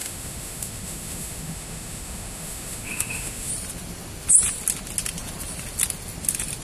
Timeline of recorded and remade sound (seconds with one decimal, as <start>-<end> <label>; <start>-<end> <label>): 0.0-3.5 remade; 3.5-6.6 recorded